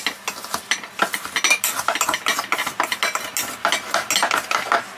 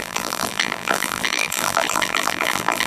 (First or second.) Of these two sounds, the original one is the first